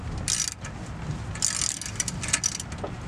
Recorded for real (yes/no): yes